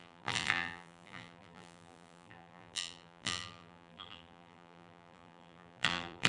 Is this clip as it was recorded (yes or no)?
no